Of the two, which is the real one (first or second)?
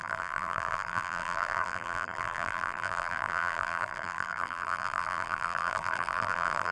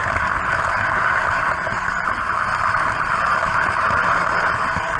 second